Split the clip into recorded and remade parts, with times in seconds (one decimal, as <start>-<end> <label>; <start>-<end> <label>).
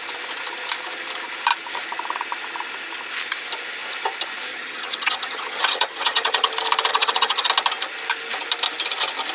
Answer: 0.0-4.5 recorded; 4.5-6.5 remade; 6.5-6.9 recorded; 6.9-7.5 remade; 7.5-9.3 recorded